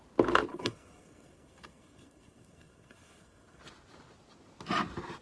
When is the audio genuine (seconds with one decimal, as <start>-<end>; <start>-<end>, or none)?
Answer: 0.0-0.5; 3.6-5.2